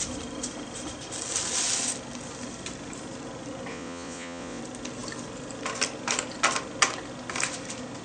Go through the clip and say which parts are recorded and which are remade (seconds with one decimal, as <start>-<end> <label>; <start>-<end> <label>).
0.0-3.7 recorded; 3.7-4.6 remade; 4.6-8.0 recorded

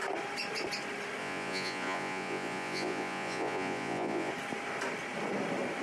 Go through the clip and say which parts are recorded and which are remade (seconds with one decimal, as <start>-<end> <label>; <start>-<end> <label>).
0.0-1.2 recorded; 1.2-4.3 remade; 4.3-5.8 recorded

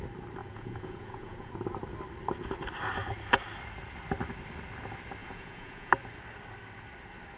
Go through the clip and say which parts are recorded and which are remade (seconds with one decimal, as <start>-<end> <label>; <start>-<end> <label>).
0.0-0.4 recorded; 0.4-1.5 remade; 1.5-5.2 recorded; 5.2-5.9 remade; 5.9-7.4 recorded

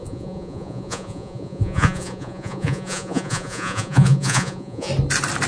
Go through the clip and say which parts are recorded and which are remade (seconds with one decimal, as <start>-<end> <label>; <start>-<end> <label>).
0.0-4.9 remade; 4.9-5.5 recorded

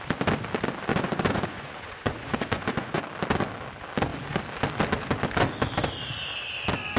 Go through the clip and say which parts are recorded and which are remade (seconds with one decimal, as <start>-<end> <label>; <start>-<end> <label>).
0.0-0.9 recorded; 0.9-3.0 remade; 3.0-7.0 recorded

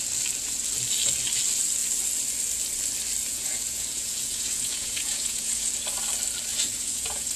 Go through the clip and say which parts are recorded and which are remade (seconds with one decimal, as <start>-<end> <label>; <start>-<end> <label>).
0.0-3.3 recorded; 3.3-5.7 remade; 5.7-6.5 recorded; 6.5-7.4 remade